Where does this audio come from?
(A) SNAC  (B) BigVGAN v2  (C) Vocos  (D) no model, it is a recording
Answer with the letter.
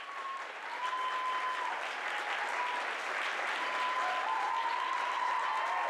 D